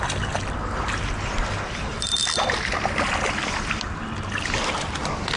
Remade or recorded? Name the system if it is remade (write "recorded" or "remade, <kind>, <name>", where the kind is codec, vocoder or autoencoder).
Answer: recorded